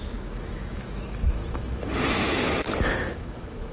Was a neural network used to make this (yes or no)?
yes